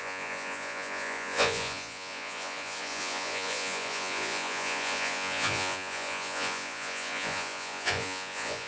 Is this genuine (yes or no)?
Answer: no